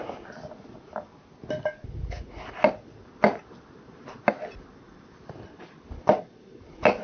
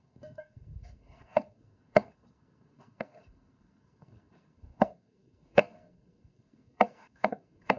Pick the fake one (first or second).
second